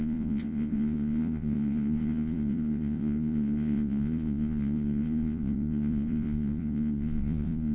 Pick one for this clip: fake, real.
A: fake